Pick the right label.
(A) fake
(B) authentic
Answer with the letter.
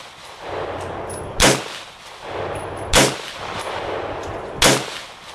B